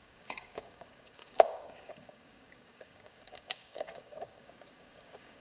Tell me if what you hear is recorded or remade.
remade